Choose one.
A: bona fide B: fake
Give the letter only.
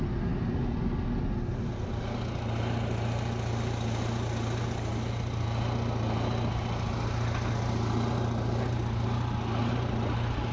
A